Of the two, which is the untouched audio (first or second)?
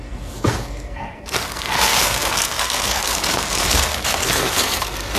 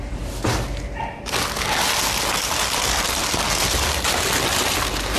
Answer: second